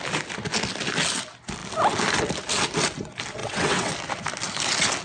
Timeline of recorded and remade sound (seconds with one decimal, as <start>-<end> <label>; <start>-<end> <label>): 0.0-3.4 recorded; 3.4-3.9 remade; 3.9-5.0 recorded